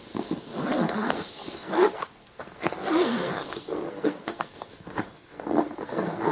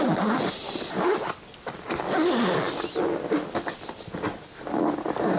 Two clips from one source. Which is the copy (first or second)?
first